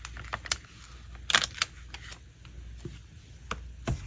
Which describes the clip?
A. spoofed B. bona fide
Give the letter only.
B